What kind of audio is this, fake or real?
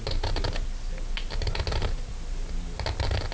real